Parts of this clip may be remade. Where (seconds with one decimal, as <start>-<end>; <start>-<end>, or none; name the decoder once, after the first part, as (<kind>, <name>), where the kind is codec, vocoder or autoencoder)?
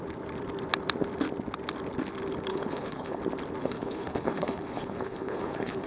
2.5-3.2 (codec, HILCodec); 3.6-5.9